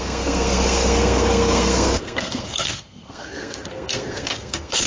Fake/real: fake